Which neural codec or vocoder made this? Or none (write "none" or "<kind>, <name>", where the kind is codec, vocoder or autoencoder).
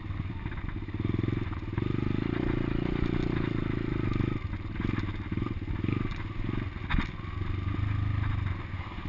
none